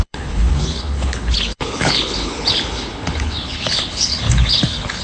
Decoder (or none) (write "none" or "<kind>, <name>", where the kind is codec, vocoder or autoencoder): codec, HILCodec